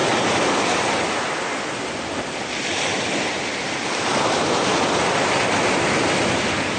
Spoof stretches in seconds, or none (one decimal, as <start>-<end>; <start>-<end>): none